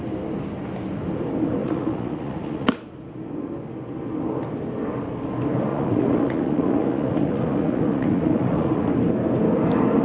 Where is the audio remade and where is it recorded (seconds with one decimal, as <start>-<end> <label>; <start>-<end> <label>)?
0.0-1.6 recorded; 1.6-2.7 remade; 2.7-5.7 recorded; 5.7-8.9 remade; 8.9-10.0 recorded